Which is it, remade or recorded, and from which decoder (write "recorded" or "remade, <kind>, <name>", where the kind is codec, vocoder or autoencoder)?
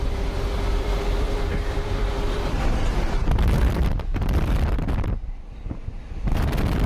remade, vocoder, BigVGAN v2